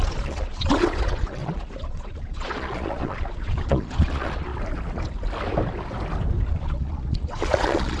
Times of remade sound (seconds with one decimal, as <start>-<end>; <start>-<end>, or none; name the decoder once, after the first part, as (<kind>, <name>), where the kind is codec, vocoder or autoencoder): 0.0-4.5 (vocoder, Vocos); 6.5-8.0

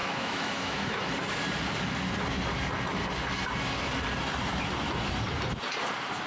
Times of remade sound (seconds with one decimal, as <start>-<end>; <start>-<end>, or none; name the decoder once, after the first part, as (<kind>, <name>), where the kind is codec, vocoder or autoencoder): 0.0-1.0 (autoencoder, DAC-VAE)